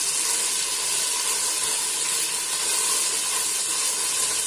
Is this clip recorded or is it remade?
recorded